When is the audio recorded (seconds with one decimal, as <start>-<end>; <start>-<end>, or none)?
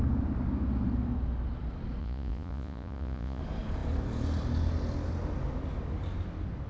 0.0-2.0; 3.4-6.7